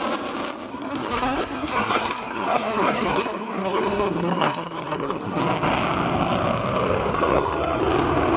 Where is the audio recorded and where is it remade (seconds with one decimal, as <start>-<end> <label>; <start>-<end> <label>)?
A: 0.0-0.7 recorded; 0.7-5.4 remade; 5.4-7.1 recorded; 7.1-7.8 remade; 7.8-8.4 recorded